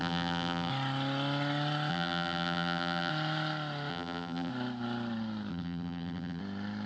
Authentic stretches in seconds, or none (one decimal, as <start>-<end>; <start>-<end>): 0.7-1.9; 3.1-3.9; 4.5-5.5; 6.4-6.9